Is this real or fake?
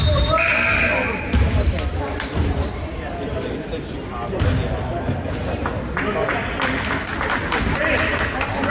real